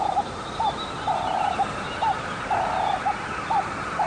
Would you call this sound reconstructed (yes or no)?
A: no